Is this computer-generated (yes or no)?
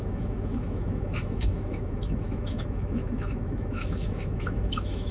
yes